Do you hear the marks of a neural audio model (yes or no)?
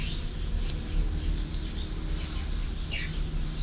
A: no